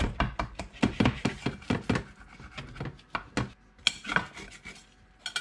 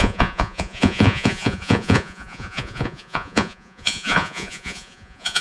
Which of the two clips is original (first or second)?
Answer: first